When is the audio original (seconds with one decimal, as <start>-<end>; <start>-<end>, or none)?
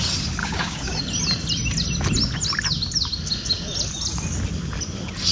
0.0-0.4; 1.0-5.3